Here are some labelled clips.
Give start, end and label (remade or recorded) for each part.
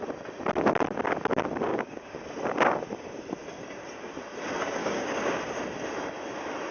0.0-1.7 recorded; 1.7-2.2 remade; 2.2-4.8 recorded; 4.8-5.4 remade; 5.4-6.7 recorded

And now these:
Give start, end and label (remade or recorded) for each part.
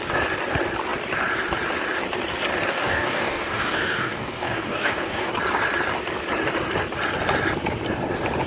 0.0-2.7 recorded; 2.7-5.3 remade; 5.3-8.5 recorded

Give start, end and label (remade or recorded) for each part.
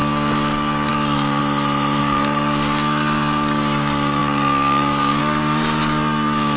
0.0-1.4 remade; 1.4-2.0 recorded; 2.0-6.6 remade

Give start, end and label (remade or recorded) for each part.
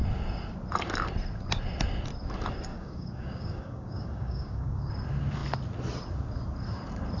0.0-2.7 recorded; 2.7-4.9 remade; 4.9-7.2 recorded